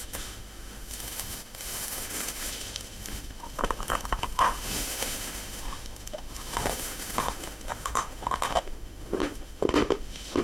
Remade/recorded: remade